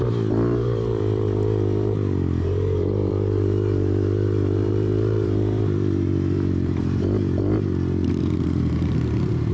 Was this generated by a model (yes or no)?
yes